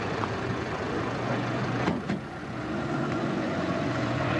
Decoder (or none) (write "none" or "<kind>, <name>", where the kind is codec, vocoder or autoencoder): vocoder, Vocos